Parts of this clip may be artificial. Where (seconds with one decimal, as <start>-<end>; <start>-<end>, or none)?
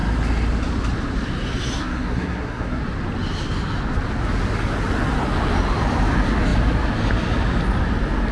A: 1.8-2.8